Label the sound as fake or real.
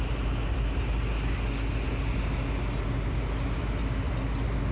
real